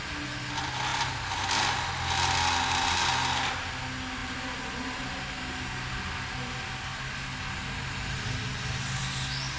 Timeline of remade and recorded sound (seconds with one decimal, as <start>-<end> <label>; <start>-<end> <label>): 0.0-9.6 recorded